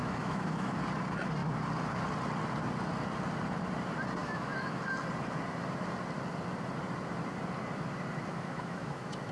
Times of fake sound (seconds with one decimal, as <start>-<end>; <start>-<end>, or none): 0.0-0.8; 4.2-4.8; 8.3-9.3